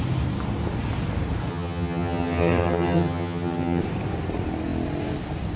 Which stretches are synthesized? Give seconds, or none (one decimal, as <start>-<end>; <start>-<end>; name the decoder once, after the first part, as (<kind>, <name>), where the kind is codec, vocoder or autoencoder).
1.5-3.8 (vocoder, HiFi-GAN)